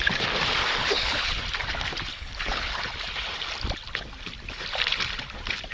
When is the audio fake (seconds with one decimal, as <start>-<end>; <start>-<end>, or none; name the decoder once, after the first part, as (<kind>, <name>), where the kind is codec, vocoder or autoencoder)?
0.8-1.4 (codec, HILCodec); 2.1-2.7